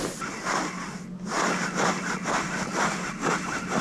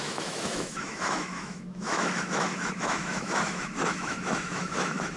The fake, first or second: second